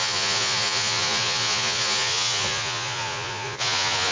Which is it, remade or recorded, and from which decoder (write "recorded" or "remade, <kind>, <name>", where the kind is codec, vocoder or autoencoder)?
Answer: remade, vocoder, Vocos